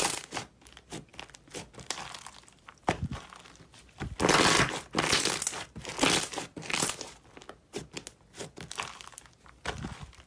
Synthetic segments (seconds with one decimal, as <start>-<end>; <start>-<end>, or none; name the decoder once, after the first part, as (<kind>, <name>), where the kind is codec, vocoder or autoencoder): none